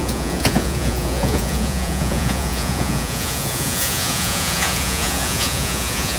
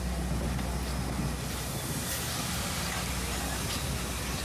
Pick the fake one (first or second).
first